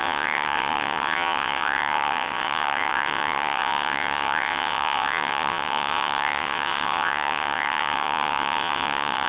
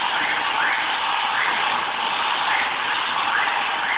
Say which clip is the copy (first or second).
first